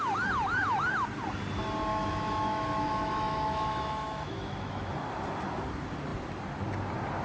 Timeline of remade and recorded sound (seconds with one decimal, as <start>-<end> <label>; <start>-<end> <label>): 0.0-1.9 recorded; 1.9-4.9 remade; 4.9-7.2 recorded